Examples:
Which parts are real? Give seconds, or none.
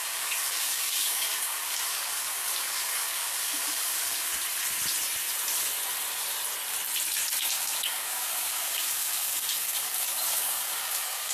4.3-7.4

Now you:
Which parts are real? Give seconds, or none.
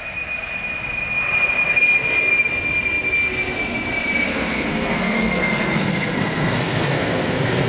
0.0-4.3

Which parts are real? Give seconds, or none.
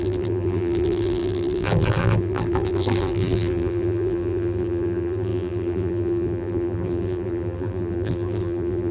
none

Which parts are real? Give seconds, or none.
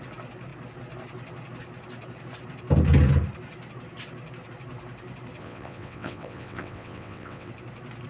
0.0-5.4; 7.5-8.1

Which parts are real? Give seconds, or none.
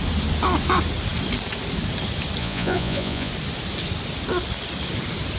0.0-2.4; 3.3-5.4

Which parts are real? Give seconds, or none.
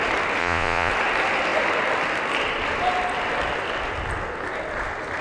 0.0-0.4; 0.9-5.2